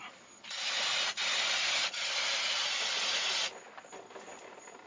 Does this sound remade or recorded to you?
recorded